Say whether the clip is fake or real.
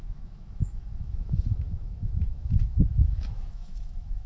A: fake